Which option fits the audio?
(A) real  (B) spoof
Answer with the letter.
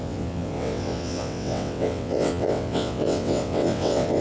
B